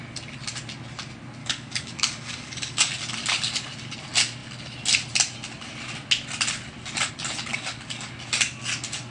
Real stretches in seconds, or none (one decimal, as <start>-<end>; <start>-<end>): 0.0-1.4; 2.9-7.5; 8.1-9.1